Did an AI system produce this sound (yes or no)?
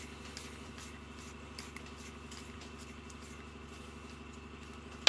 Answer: no